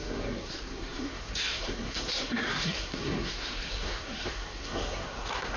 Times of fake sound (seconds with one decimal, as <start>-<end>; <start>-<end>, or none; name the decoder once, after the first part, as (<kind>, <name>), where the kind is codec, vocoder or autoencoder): 0.0-5.6 (codec, SNAC)